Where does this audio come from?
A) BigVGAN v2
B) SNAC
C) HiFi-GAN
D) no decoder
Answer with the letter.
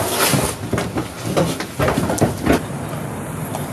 D